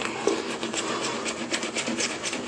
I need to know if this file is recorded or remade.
recorded